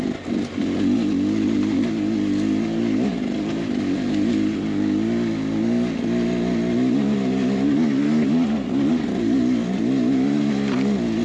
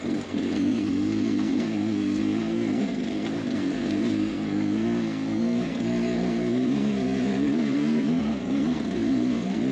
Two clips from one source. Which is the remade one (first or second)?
second